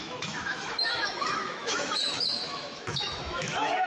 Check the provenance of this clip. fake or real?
fake